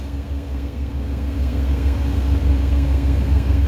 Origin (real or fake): fake